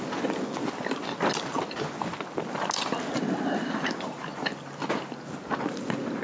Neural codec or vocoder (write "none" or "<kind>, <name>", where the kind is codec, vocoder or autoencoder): none